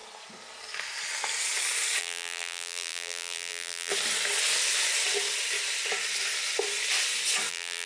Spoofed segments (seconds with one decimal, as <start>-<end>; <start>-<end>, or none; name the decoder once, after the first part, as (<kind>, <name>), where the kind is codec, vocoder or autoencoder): 2.0-3.9 (vocoder, BigVGAN v2); 7.5-7.9